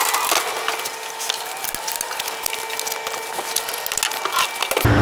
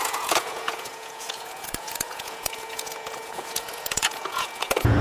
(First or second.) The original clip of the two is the first